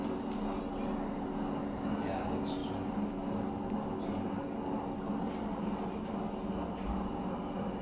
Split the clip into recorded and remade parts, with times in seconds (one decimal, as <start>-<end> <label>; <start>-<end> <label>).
0.0-7.8 recorded

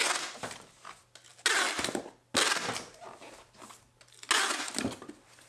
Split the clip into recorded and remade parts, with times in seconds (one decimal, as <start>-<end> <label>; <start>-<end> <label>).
0.0-5.5 recorded

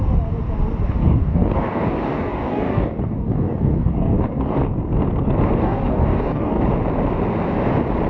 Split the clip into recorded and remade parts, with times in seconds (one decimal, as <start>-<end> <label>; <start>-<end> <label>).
0.0-1.0 recorded; 1.0-4.7 remade; 4.7-5.6 recorded; 5.6-6.6 remade; 6.6-8.1 recorded